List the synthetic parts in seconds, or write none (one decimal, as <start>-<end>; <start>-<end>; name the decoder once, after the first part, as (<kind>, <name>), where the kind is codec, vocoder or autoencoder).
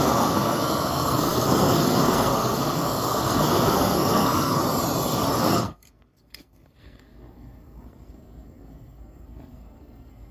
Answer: 0.0-4.6 (codec, SNAC); 5.4-10.3